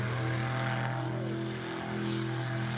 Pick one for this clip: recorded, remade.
recorded